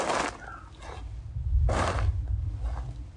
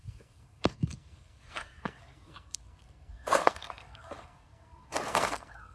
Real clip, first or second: first